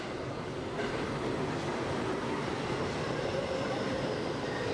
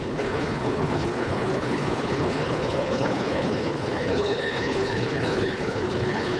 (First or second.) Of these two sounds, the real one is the first